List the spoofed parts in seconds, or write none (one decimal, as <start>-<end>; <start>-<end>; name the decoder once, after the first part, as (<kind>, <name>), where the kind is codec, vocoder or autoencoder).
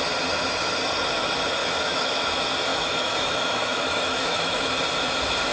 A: 1.6-2.2 (autoencoder, DAC-VAE); 2.7-4.7